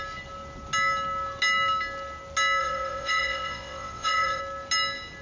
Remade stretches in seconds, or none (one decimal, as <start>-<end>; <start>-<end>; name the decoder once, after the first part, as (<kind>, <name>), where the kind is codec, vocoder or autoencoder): 2.6-4.4 (vocoder, WaveNeXt)